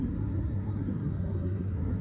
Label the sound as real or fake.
fake